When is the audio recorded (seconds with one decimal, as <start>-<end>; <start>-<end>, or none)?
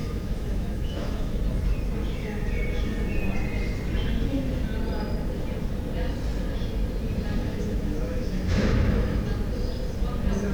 1.4-7.4; 9.2-10.5